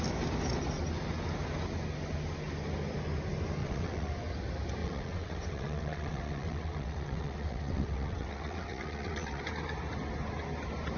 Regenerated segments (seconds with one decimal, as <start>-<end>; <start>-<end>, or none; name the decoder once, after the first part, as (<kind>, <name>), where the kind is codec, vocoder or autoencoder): 3.6-4.1 (vocoder, WaveNeXt); 4.8-9.4